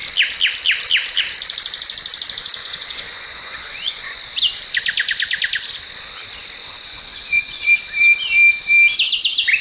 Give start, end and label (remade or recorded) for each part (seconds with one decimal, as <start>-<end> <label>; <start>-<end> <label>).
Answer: 0.0-2.6 recorded; 2.6-4.2 remade; 4.2-6.6 recorded; 6.6-7.7 remade; 7.7-9.6 recorded